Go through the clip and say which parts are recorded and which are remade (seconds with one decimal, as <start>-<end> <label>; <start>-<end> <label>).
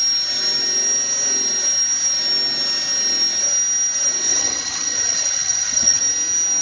0.0-4.3 recorded; 4.3-6.0 remade; 6.0-6.6 recorded